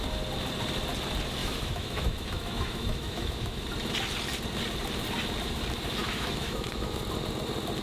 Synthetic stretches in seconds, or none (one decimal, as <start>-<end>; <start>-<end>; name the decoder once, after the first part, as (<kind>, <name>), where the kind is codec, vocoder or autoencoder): 1.4-3.6 (autoencoder, DAC-VAE); 6.0-7.0

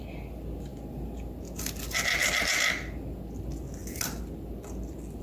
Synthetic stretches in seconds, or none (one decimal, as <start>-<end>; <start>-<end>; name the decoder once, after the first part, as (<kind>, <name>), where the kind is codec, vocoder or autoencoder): none

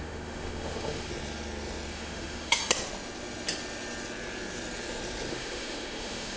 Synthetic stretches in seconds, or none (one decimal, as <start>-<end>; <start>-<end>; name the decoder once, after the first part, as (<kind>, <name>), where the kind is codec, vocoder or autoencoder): 0.0-1.1 (autoencoder, DAC-VAE); 1.9-2.6; 5.3-6.4

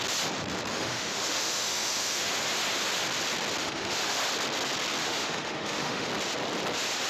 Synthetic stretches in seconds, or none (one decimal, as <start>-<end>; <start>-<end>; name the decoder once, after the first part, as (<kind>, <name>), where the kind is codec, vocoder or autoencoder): 0.7-2.3 (autoencoder, DAC-VAE); 3.6-4.2; 5.0-6.1

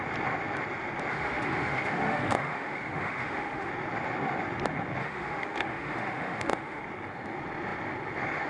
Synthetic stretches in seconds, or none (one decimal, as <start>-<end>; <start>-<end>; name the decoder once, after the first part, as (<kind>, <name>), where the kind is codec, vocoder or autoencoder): 1.1-3.7 (autoencoder, DAC-VAE); 5.0-6.8

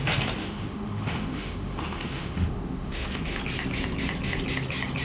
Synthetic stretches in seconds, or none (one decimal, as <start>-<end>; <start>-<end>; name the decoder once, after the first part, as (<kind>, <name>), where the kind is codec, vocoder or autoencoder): 0.4-3.4 (autoencoder, DAC-VAE)